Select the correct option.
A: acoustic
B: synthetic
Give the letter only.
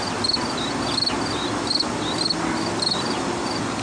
A